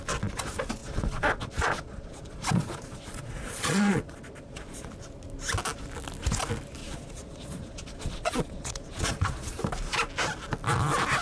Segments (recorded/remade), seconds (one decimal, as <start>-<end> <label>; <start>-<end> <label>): 0.0-0.8 recorded; 0.8-4.9 remade; 4.9-6.8 recorded; 6.8-9.6 remade; 9.6-11.2 recorded